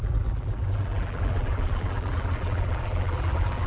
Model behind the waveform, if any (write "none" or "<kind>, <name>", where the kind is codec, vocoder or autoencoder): vocoder, BigVGAN v2